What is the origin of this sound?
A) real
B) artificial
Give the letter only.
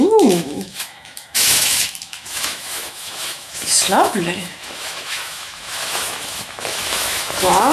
B